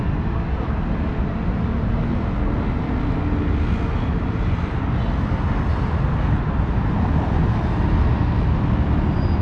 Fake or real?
real